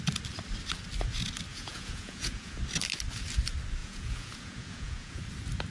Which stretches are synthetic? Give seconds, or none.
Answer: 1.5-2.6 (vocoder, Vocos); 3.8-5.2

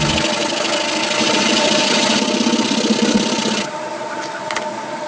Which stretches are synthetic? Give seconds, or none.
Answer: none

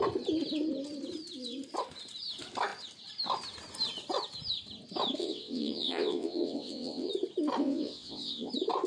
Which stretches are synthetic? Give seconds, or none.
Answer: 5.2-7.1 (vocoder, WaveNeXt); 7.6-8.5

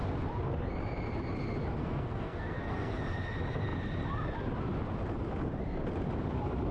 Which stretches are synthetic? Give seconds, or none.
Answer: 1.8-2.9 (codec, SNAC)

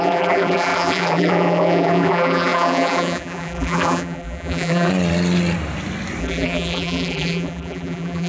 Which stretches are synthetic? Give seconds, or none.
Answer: 0.0-4.9 (vocoder, BigVGAN v2); 6.2-8.3

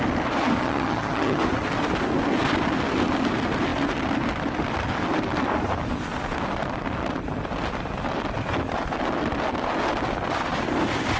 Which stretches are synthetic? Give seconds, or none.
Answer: 0.6-1.4 (vocoder, HiFi-GAN)

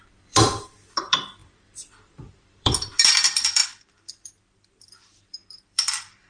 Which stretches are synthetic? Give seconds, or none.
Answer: 0.0-6.3 (vocoder, BigVGAN v2)

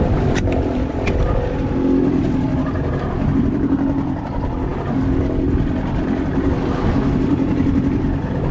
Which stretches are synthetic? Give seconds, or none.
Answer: none